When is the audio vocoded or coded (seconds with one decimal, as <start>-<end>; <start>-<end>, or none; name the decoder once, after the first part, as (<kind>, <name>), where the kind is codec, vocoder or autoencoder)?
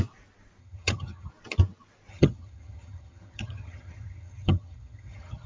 0.6-1.3 (vocoder, HiFi-GAN); 2.1-5.5